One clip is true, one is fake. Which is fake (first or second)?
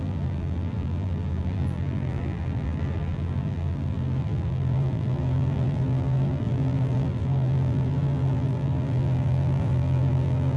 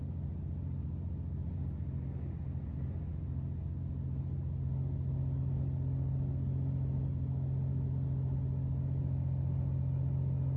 first